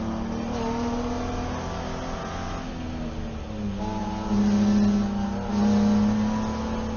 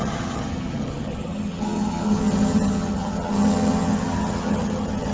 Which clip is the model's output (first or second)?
second